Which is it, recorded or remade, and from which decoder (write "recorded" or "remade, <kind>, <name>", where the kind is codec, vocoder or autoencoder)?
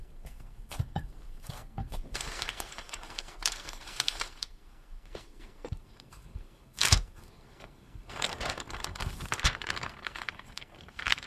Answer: remade, codec, SNAC